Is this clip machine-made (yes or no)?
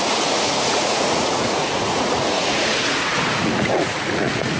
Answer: yes